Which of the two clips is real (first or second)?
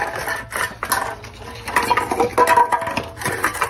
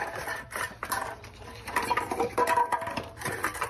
first